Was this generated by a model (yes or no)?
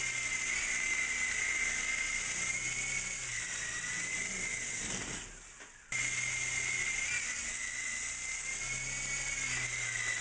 no